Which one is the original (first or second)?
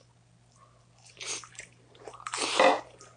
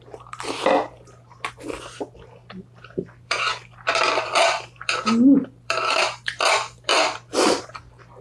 first